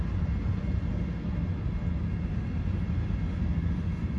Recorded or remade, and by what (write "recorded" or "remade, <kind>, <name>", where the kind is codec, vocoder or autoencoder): recorded